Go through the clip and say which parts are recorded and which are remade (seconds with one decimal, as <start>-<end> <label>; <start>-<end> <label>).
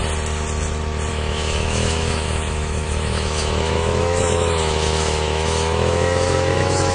0.0-1.1 recorded; 1.1-6.9 remade